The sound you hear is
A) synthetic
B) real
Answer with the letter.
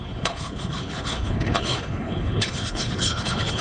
A